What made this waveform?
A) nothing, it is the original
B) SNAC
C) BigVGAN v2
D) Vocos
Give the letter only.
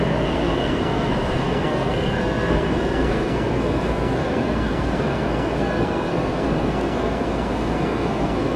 B